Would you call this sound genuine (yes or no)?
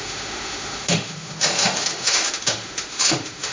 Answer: no